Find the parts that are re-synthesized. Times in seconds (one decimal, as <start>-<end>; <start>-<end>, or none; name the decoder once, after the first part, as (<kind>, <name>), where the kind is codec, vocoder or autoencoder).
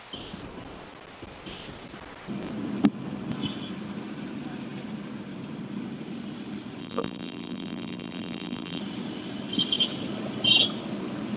6.8-8.8 (vocoder, BigVGAN v2)